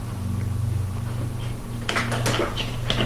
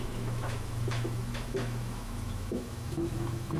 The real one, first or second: first